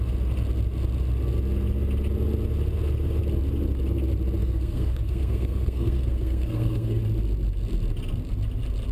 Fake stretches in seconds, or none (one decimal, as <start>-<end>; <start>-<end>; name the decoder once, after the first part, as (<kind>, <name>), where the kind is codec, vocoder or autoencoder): 4.4-7.0 (codec, SNAC)